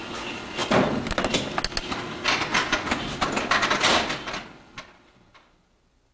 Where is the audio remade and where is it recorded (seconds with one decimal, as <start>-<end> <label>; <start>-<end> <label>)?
0.0-6.1 recorded

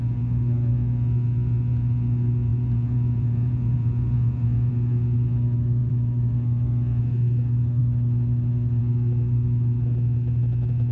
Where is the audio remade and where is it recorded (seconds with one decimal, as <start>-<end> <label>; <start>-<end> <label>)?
0.0-2.5 recorded; 2.5-4.7 remade; 4.7-5.8 recorded; 5.8-6.3 remade; 6.3-10.9 recorded

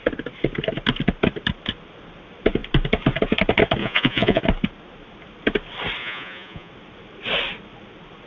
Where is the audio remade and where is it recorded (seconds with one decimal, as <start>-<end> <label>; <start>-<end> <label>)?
0.0-3.8 recorded; 3.8-4.4 remade; 4.4-6.0 recorded; 6.0-6.7 remade; 6.7-8.3 recorded

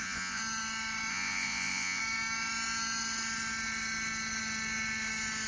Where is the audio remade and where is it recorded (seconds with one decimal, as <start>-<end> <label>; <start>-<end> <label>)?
0.0-0.4 remade; 0.4-1.1 recorded; 1.1-2.0 remade; 2.0-5.5 recorded

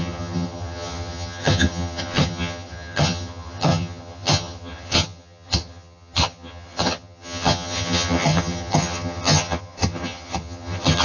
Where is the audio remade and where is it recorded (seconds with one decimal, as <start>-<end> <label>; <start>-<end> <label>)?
0.0-11.0 remade

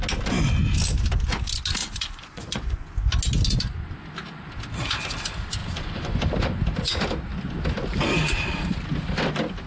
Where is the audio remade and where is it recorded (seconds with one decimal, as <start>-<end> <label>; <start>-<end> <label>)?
0.0-1.8 recorded; 1.8-3.1 remade; 3.1-5.6 recorded; 5.6-6.2 remade; 6.2-9.7 recorded